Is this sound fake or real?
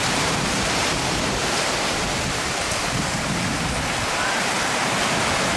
fake